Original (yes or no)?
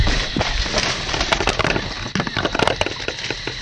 yes